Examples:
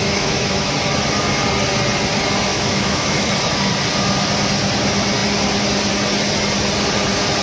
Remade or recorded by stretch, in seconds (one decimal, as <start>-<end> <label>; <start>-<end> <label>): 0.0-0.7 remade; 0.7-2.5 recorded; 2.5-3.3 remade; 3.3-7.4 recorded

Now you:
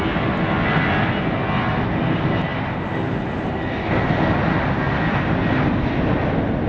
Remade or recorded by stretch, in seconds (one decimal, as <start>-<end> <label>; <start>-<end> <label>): 0.0-6.7 recorded

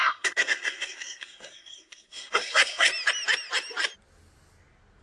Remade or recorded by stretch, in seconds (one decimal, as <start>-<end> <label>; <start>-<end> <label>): 0.0-2.9 remade; 2.9-5.0 recorded

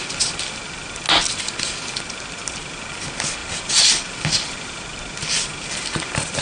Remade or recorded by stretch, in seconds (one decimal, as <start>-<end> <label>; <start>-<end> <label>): 0.0-3.4 recorded; 3.4-5.0 remade; 5.0-6.4 recorded

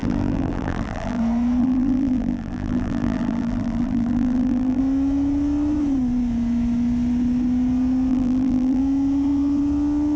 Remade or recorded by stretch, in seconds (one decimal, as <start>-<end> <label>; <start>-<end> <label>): 0.0-1.2 remade; 1.2-1.6 recorded; 1.6-4.8 remade; 4.8-8.1 recorded; 8.1-8.8 remade; 8.8-10.2 recorded

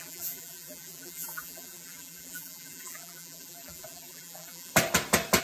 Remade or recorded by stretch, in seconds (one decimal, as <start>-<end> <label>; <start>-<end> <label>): 0.0-4.7 remade; 4.7-5.4 recorded

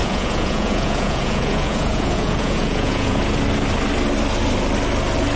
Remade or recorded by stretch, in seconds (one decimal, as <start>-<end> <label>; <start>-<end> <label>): 0.0-3.2 remade; 3.2-5.4 recorded